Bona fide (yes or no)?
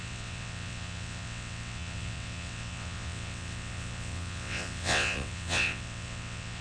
no